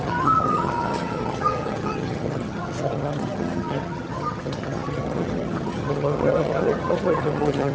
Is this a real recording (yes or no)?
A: no